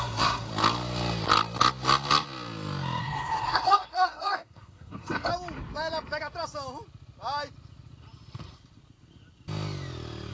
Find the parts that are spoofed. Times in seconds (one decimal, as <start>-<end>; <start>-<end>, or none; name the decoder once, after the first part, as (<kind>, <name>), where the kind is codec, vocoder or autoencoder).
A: 0.0-0.5 (codec, SNAC); 3.0-5.3